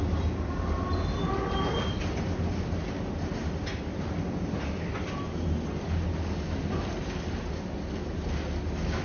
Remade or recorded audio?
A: recorded